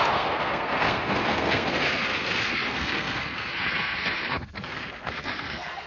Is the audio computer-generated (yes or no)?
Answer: yes